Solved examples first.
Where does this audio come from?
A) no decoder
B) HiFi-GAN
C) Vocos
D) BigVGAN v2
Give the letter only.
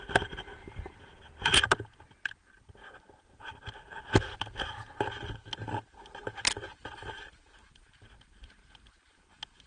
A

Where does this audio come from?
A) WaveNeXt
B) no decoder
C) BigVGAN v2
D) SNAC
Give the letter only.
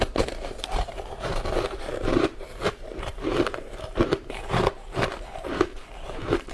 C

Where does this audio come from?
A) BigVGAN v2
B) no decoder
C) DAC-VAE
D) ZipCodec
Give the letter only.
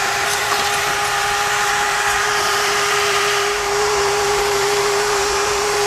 A